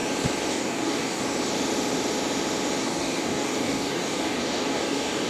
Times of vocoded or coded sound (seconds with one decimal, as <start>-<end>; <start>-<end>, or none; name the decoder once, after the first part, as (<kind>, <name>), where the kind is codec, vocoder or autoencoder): 0.5-1.2 (codec, DAC); 2.8-5.3

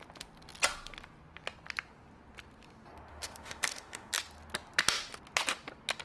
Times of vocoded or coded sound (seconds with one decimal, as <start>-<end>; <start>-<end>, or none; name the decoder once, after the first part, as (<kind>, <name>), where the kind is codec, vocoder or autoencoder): 3.1-4.1 (autoencoder, DAC-VAE)

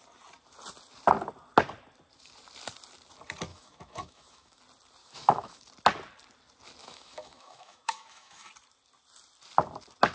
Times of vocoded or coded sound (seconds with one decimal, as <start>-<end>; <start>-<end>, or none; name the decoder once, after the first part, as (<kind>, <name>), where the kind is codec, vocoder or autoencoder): 3.5-4.6 (autoencoder, DAC-VAE); 5.0-5.6; 6.8-8.5

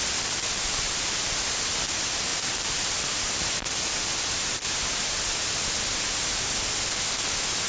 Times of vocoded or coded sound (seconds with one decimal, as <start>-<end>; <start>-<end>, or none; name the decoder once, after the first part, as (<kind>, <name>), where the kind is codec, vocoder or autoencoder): none

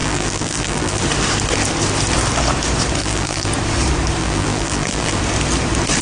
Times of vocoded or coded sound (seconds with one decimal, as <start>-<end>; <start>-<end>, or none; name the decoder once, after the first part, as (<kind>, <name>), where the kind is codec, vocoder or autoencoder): 0.0-1.0 (vocoder, BigVGAN v2); 3.0-3.5; 4.2-5.2

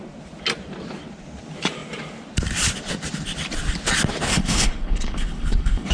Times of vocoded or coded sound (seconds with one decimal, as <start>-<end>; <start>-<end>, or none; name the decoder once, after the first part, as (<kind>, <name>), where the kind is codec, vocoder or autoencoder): 4.3-5.9 (codec, HILCodec)

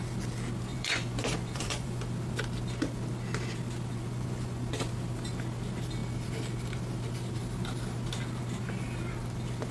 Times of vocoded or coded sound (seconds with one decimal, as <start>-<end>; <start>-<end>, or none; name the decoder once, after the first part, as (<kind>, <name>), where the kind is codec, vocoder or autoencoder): 0.7-2.0 (vocoder, Vocos); 3.9-4.7